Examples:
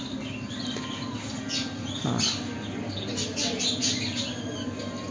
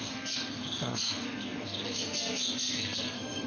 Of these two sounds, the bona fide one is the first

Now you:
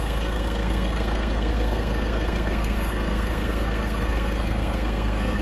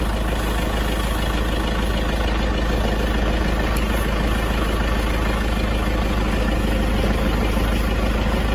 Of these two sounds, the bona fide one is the second